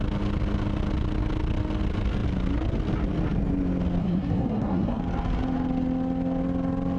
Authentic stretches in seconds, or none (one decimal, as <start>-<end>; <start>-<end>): 0.0-4.0; 5.0-7.0